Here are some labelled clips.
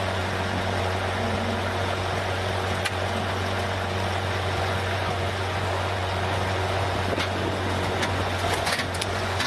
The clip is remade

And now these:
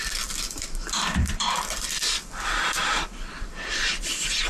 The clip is remade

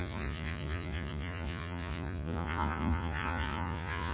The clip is remade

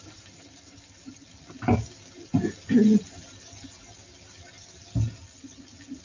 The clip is recorded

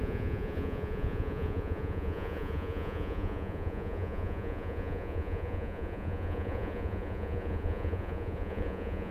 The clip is remade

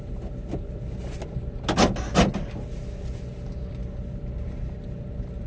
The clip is recorded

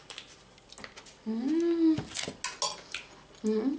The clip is recorded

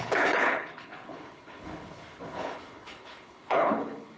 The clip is remade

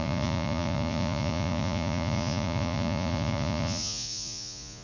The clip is remade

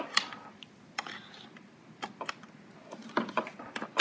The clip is recorded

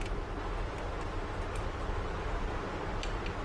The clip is recorded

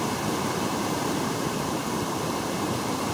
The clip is remade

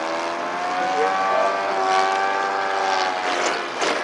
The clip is recorded